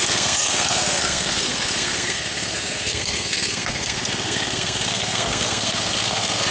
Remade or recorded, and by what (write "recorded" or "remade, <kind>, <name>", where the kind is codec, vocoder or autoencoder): remade, codec, SNAC